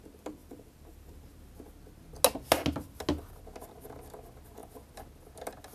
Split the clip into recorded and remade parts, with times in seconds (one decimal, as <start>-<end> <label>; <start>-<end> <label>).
0.0-0.4 recorded; 0.4-1.5 remade; 1.5-5.7 recorded